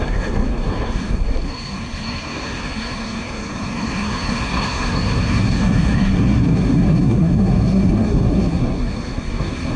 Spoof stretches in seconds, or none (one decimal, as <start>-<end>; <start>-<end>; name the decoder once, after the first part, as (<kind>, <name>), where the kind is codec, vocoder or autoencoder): 0.0-9.8 (codec, SNAC)